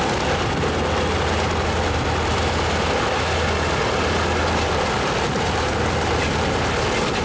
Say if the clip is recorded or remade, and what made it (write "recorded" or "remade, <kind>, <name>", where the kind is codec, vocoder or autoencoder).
recorded